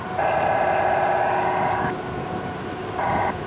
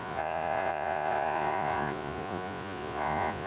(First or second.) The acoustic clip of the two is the first